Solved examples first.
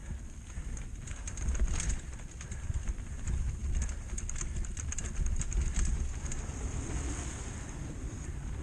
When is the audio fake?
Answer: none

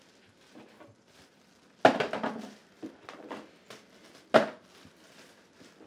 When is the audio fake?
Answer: none

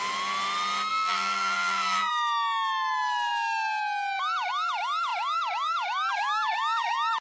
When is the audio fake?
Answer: 0.9-2.1 (vocoder, BigVGAN v2)

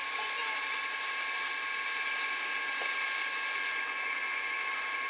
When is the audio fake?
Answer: none

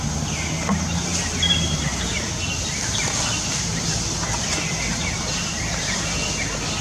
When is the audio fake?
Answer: none